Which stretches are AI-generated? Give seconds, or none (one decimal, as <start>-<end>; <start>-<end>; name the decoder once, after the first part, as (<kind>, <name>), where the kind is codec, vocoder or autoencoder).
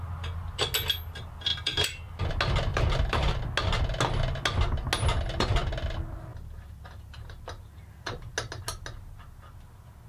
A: 1.5-2.3 (vocoder, BigVGAN v2); 2.7-3.4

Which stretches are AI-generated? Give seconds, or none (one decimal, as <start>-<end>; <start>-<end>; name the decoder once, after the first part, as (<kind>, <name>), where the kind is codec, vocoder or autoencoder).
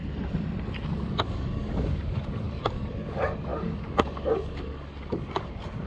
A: 1.1-5.9 (codec, DAC)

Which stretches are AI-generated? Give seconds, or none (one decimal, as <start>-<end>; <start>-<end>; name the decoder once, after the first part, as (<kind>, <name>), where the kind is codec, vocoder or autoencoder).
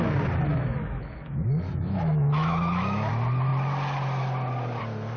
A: 0.5-3.1 (autoencoder, DAC-VAE)